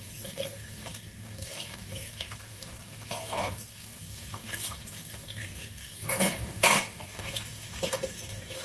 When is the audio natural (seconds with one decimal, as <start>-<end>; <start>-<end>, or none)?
none